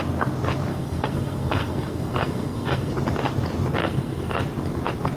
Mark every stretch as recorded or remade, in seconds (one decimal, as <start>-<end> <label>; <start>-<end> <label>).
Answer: 0.0-0.7 recorded; 0.7-2.9 remade; 2.9-3.8 recorded; 3.8-4.4 remade; 4.4-5.2 recorded